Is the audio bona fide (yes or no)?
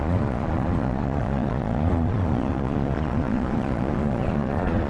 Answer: no